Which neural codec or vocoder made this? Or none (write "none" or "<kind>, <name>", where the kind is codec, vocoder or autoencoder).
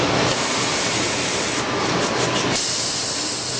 none